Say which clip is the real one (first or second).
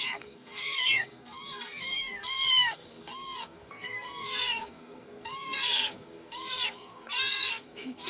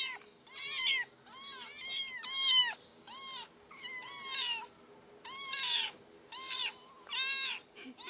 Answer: second